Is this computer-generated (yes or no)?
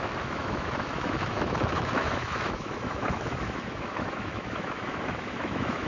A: yes